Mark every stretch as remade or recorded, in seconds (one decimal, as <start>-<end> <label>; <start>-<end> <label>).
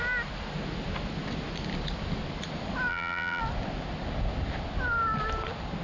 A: 0.0-2.9 recorded; 2.9-3.4 remade; 3.4-5.8 recorded